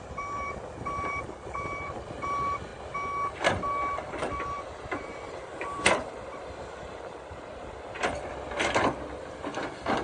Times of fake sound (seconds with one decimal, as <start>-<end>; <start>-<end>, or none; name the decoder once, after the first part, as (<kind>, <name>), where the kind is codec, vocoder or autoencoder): 0.0-2.7 (vocoder, BigVGAN v2); 4.4-10.0